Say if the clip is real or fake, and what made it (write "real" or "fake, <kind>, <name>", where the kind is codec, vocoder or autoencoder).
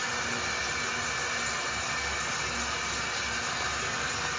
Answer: real